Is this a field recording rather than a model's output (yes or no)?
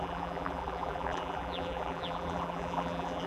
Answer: no